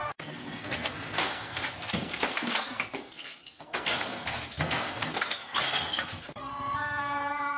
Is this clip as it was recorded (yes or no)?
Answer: no